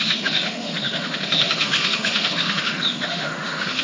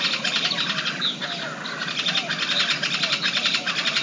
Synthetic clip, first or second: first